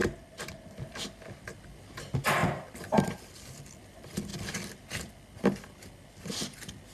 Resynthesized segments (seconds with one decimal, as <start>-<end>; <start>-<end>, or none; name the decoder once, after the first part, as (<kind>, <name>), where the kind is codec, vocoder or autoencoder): 0.0-0.8 (vocoder, BigVGAN v2); 2.4-3.3